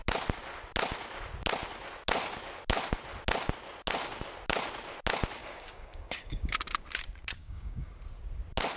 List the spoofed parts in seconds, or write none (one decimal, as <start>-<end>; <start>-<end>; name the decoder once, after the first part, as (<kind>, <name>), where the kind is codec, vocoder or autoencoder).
5.4-6.5 (codec, DAC); 7.4-7.9